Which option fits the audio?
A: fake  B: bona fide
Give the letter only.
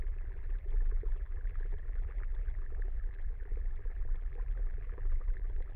A